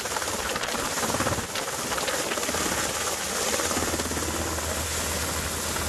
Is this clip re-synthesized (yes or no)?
no